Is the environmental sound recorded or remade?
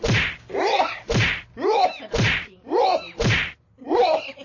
recorded